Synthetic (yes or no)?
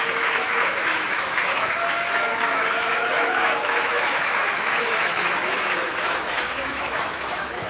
yes